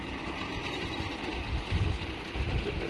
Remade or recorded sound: recorded